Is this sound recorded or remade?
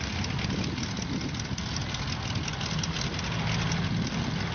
recorded